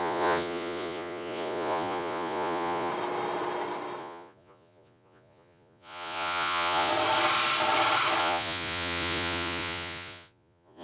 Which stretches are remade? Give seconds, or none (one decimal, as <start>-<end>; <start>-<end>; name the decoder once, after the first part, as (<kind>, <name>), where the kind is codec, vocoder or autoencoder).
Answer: 0.0-2.9 (vocoder, Vocos); 4.0-6.9; 8.2-10.8